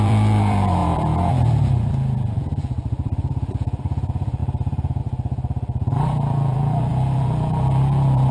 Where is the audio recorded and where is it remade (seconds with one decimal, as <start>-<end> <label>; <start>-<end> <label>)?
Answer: 0.0-8.3 remade